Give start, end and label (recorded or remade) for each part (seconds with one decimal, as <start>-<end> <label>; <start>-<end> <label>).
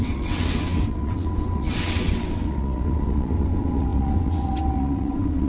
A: 0.0-5.5 remade